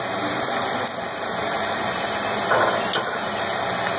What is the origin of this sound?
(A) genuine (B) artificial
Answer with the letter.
A